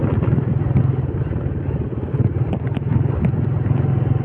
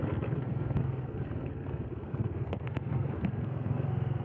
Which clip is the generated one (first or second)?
second